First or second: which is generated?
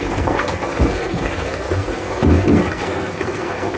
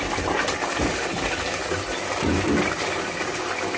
first